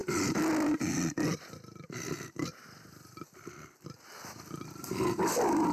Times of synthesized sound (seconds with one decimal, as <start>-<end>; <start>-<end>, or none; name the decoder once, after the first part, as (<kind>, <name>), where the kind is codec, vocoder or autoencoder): none